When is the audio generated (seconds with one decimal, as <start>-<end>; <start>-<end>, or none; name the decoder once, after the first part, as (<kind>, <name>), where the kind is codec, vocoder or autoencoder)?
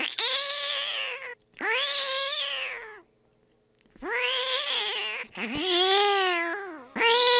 none